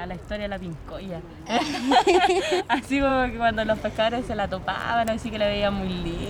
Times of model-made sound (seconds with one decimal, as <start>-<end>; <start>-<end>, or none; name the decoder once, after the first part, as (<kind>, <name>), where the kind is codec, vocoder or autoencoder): 1.8-2.6 (autoencoder, DAC-VAE)

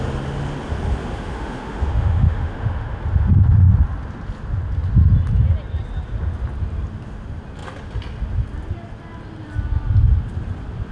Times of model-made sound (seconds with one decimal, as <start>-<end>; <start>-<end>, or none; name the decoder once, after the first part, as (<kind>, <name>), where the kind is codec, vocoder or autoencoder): 1.0-3.0 (autoencoder, DAC-VAE)

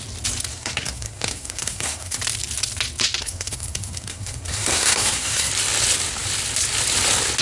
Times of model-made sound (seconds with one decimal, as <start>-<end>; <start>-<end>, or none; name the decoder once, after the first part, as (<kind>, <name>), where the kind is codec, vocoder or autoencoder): 0.5-2.2 (codec, SNAC); 3.2-5.5